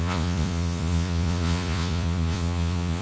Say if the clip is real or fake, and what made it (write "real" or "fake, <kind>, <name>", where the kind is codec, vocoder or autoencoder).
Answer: fake, vocoder, Vocos